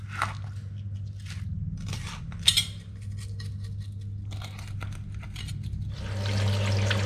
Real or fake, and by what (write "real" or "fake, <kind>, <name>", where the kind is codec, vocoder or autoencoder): real